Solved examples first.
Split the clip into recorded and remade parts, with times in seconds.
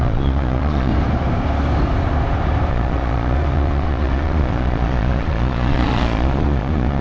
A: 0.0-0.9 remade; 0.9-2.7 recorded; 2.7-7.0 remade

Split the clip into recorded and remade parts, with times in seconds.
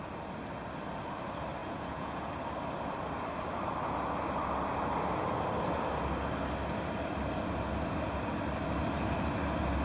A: 0.0-1.6 recorded; 1.6-2.3 remade; 2.3-9.8 recorded